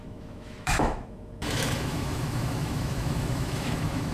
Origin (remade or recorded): remade